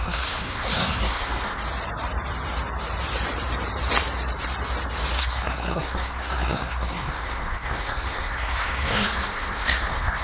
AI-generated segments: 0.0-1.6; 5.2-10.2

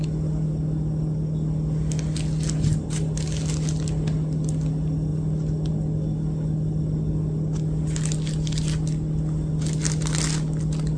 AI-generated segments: none

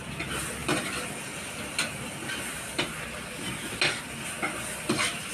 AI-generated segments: none

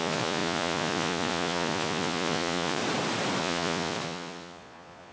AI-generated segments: 0.0-2.8; 3.4-5.1